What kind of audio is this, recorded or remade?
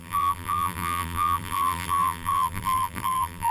remade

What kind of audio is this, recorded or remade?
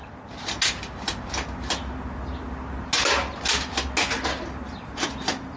recorded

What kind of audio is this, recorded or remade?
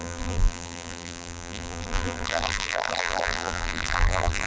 remade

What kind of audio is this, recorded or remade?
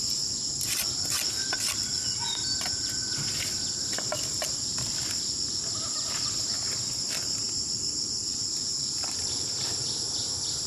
recorded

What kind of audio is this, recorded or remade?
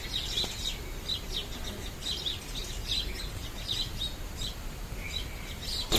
recorded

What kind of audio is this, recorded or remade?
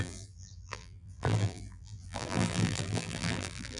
remade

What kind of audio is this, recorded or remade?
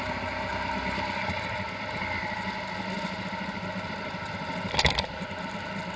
recorded